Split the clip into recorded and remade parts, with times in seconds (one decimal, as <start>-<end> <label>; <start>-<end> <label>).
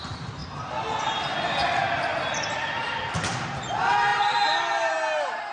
0.0-2.1 recorded; 2.1-3.0 remade; 3.0-4.1 recorded; 4.1-4.9 remade; 4.9-5.5 recorded